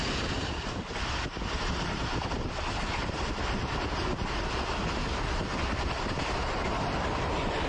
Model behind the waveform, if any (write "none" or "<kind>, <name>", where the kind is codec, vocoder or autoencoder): none